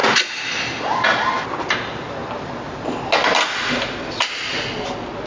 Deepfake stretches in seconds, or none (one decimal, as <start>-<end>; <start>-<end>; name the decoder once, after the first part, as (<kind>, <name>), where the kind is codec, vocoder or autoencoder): none